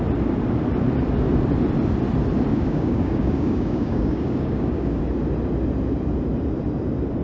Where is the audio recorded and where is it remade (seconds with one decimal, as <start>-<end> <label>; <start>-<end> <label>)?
0.0-2.5 recorded; 2.5-5.0 remade; 5.0-7.2 recorded